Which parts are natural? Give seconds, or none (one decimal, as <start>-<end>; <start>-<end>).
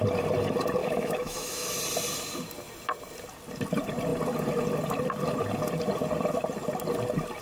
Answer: 0.0-0.8; 1.8-7.4